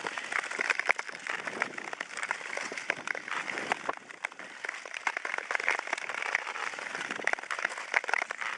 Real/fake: real